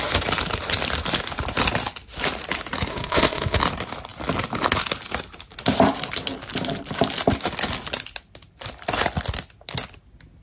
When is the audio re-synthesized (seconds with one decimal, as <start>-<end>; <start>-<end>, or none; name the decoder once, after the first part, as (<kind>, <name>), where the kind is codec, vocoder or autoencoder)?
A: 2.9-3.6 (autoencoder, DAC-VAE)